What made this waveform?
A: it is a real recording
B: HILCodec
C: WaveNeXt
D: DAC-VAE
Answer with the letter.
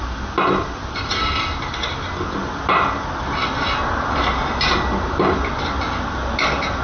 A